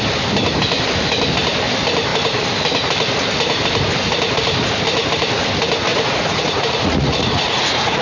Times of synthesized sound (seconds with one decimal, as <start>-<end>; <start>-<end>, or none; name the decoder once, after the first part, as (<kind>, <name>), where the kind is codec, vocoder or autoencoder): 5.9-8.0 (vocoder, Vocos)